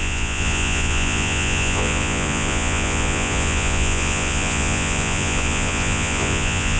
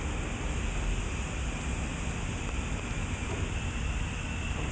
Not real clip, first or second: first